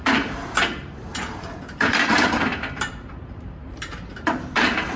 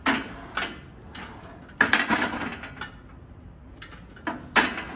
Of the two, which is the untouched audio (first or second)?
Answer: second